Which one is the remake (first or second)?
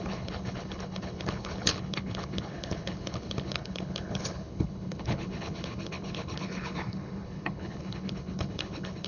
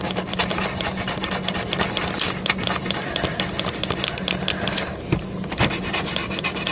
first